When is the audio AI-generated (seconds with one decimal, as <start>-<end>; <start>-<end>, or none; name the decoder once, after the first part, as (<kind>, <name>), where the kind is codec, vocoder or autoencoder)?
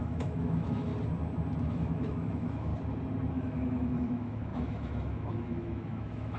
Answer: 0.0-0.9 (autoencoder, DAC-VAE); 1.7-2.7; 3.3-6.4